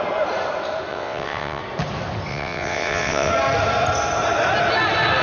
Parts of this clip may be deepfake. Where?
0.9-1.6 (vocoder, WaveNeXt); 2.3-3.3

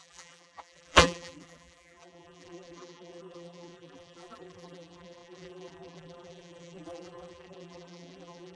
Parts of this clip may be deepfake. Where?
0.0-8.6 (vocoder, BigVGAN v2)

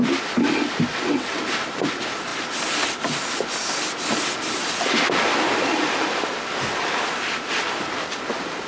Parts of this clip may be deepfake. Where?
0.9-1.4 (vocoder, WaveNeXt)